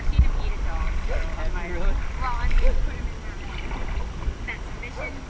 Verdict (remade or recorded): recorded